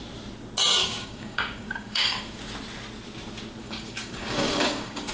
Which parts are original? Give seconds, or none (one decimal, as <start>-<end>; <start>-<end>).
0.0-0.8; 2.4-3.6